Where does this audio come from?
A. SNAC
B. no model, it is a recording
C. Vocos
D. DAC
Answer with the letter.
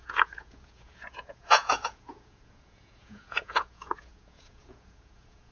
C